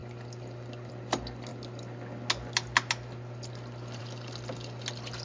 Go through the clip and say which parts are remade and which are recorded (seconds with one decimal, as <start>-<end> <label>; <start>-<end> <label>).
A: 0.0-5.2 recorded